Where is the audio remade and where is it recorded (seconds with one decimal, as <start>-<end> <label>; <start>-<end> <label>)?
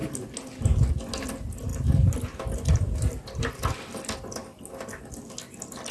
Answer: 0.0-5.9 recorded